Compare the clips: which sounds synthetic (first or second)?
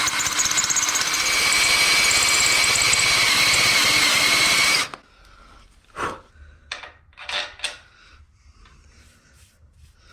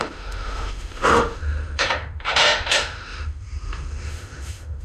second